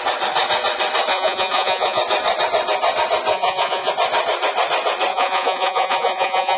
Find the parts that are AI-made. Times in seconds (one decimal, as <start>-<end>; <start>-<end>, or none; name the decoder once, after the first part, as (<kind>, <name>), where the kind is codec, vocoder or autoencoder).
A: 1.1-2.0 (vocoder, Vocos); 3.3-3.9; 5.1-6.6